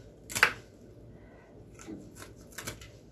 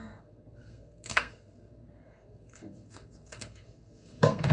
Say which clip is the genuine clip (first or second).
first